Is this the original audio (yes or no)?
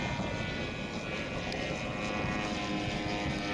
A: yes